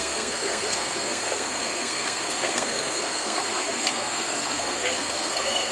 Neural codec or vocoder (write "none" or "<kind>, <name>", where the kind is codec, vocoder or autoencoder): codec, SNAC